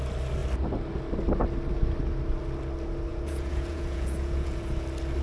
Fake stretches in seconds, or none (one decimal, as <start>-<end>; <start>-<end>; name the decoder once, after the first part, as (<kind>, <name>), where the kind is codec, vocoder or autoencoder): 3.1-4.6 (vocoder, Vocos)